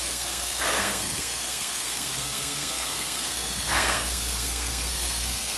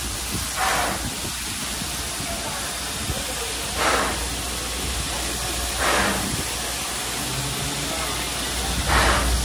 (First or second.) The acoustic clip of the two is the second